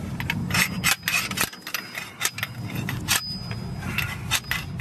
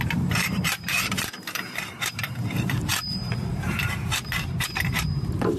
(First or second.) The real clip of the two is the first